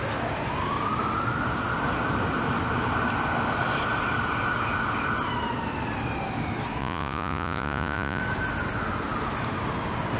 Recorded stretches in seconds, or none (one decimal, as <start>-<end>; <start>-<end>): 0.0-6.8; 8.2-10.2